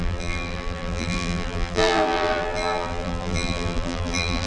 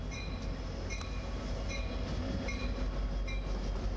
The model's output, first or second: first